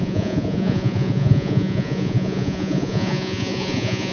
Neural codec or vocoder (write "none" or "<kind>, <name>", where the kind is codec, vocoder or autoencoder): vocoder, Vocos